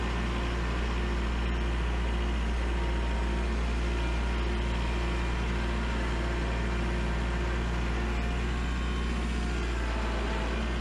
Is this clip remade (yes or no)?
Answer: no